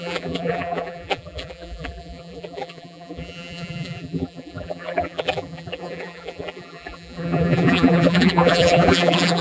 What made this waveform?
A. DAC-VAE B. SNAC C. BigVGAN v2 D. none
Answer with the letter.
C